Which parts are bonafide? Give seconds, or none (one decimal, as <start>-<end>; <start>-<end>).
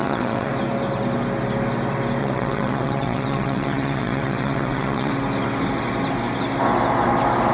0.5-2.2; 5.1-7.5